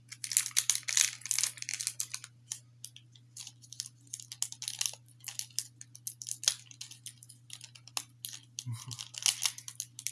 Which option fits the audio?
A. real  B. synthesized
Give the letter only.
A